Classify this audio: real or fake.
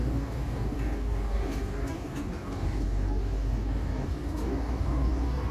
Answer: fake